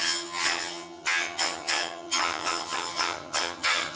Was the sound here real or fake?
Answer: fake